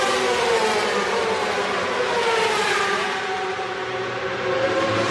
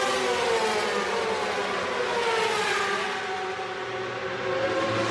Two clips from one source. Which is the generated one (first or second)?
first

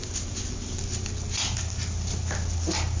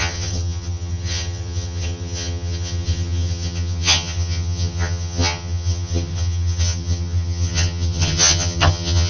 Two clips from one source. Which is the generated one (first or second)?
second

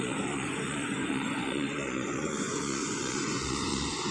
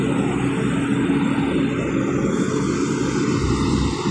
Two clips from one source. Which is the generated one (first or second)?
first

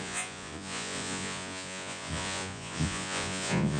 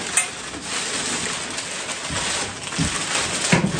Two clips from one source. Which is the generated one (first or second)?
first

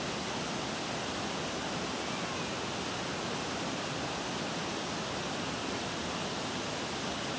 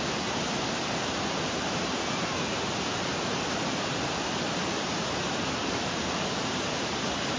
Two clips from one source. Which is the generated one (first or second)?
second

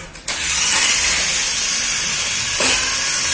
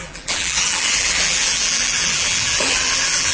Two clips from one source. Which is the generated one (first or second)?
second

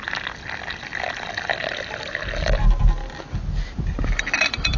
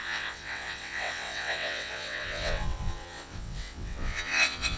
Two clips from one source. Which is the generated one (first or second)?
second